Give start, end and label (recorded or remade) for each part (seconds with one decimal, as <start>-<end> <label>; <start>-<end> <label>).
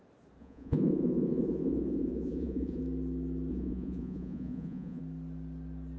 0.0-0.4 recorded; 0.4-2.8 remade; 2.8-3.5 recorded; 3.5-5.0 remade; 5.0-6.0 recorded